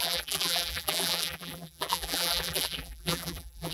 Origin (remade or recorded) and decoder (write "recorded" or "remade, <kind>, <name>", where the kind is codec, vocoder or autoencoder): remade, vocoder, BigVGAN v2